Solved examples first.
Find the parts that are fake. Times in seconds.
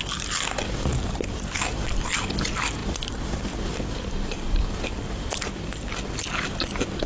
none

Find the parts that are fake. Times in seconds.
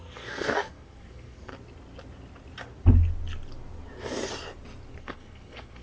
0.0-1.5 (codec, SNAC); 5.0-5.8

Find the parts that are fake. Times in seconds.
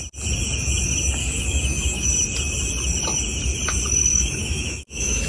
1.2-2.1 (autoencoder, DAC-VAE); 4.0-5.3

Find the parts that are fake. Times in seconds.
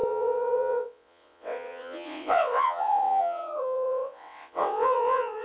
0.0-5.4 (vocoder, WaveNeXt)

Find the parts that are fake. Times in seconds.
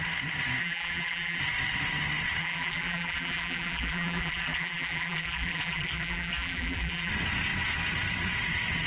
0.6-1.4 (vocoder, BigVGAN v2); 2.4-7.1